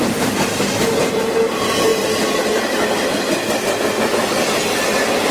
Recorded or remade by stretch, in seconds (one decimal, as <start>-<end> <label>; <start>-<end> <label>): 0.0-5.3 recorded